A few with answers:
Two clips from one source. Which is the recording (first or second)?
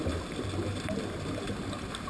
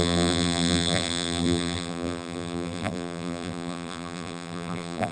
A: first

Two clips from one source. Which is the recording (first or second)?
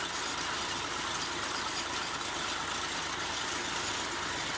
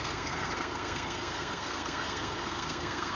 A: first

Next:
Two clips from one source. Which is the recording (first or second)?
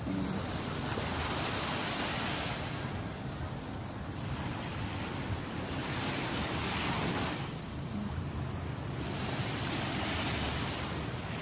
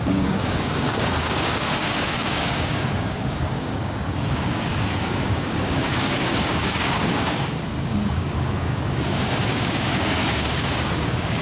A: first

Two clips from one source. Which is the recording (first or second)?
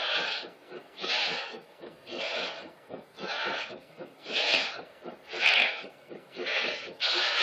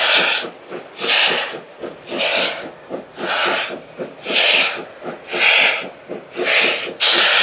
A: second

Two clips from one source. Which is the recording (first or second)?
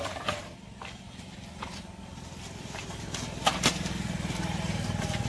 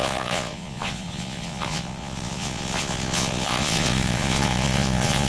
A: first